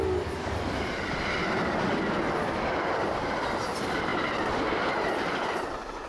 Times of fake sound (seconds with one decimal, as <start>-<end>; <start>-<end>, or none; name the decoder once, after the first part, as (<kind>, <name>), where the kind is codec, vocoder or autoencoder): none